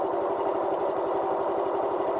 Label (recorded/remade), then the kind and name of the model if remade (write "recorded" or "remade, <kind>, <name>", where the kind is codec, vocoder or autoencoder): recorded